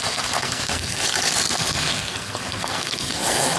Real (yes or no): no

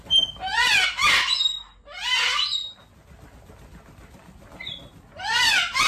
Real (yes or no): yes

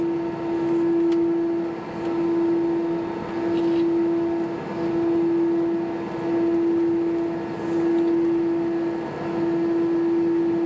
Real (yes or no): yes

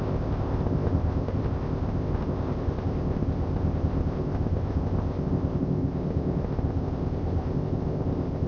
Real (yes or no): no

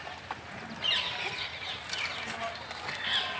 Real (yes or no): yes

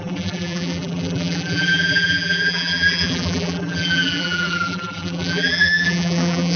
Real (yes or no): no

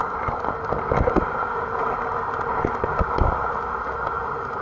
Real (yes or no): yes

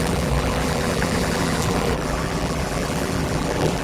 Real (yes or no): no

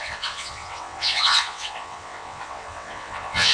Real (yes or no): no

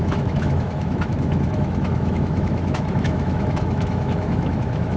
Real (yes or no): no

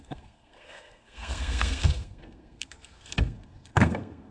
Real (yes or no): no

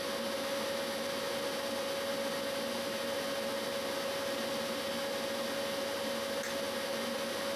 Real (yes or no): yes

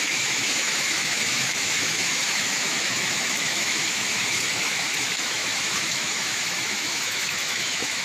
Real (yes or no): no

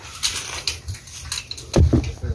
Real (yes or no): yes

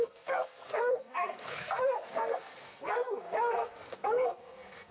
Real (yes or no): no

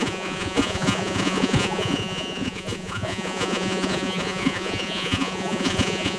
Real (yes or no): no